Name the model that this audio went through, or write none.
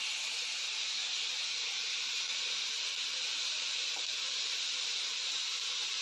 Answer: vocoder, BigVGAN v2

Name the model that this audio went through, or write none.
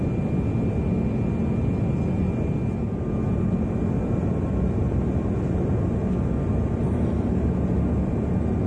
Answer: none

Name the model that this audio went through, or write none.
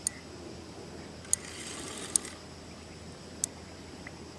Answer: none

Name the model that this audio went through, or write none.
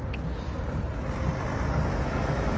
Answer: none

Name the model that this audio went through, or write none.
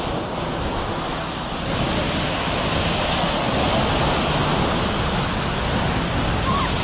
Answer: none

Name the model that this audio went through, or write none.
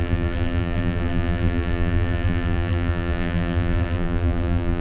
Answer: vocoder, BigVGAN v2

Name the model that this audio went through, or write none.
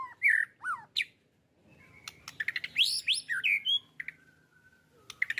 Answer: none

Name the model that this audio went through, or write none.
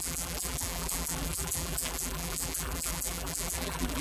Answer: vocoder, BigVGAN v2